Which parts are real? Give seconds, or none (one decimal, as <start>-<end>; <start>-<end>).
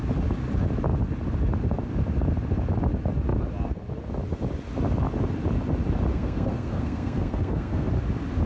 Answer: 0.0-6.1; 7.9-8.5